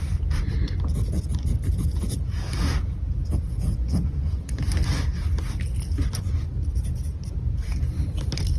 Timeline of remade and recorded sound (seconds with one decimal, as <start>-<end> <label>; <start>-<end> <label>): 0.0-3.8 recorded; 3.8-4.6 remade; 4.6-8.6 recorded